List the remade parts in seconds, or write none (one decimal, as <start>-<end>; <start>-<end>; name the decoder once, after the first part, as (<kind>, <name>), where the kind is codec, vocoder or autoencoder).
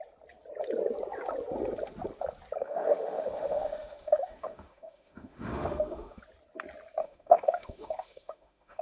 2.6-6.2 (autoencoder, DAC-VAE); 7.0-8.8